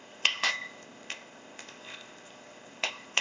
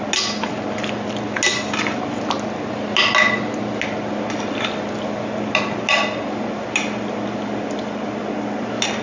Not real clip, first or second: first